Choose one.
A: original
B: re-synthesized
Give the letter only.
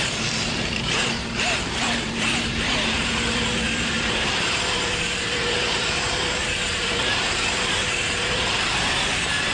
B